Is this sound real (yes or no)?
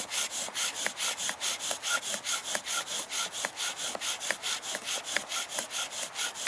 yes